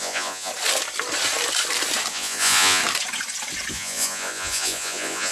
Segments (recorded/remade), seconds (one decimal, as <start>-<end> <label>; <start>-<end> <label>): 0.0-0.5 remade; 0.5-2.1 recorded; 2.1-2.8 remade; 2.8-3.7 recorded; 3.7-5.3 remade